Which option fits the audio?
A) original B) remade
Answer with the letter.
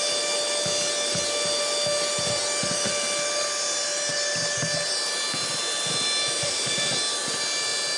A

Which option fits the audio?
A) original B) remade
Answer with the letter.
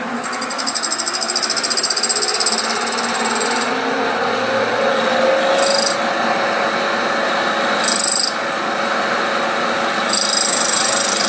A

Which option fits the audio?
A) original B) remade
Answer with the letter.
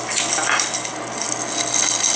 A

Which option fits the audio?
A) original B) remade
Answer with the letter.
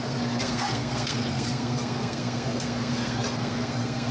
B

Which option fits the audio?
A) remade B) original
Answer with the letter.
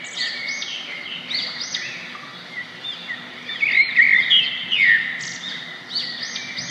B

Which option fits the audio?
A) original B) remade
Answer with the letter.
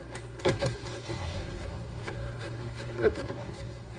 B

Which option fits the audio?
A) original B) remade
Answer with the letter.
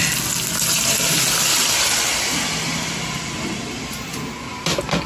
A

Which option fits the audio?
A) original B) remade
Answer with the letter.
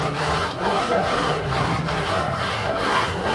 B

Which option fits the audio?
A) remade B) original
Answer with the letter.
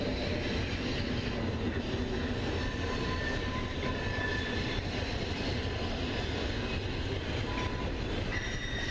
B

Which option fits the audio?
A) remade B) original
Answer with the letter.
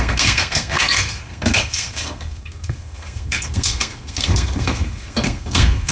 A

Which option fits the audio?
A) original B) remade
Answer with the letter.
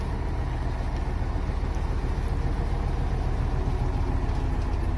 A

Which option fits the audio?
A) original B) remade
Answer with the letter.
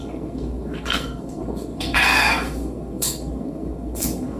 B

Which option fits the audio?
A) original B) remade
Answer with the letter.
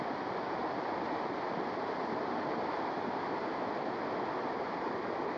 A